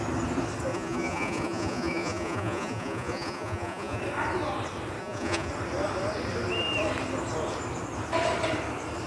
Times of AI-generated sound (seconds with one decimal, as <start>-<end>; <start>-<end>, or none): 0.7-4.0; 5.0-5.5